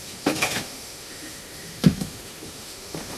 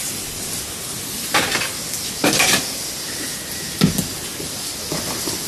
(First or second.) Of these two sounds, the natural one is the second